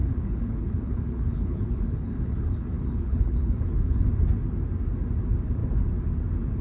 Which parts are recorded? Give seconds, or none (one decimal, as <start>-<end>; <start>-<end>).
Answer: 4.0-6.6